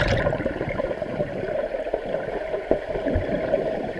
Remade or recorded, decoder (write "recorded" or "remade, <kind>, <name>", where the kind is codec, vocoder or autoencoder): remade, vocoder, BigVGAN v2